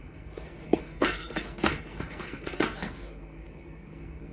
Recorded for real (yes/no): no